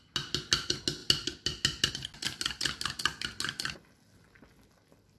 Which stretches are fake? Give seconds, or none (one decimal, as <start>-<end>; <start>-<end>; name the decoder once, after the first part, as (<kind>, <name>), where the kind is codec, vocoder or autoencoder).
none